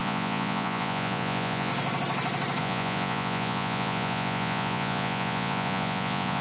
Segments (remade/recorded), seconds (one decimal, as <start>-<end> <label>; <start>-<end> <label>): 0.0-1.7 remade; 1.7-2.6 recorded; 2.6-6.4 remade